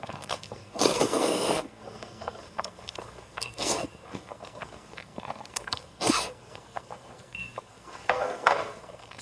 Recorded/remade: remade